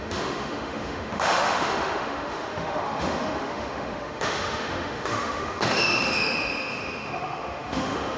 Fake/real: fake